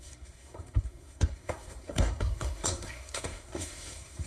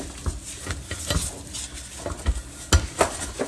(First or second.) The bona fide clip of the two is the second